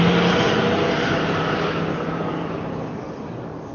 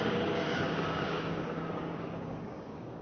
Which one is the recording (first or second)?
first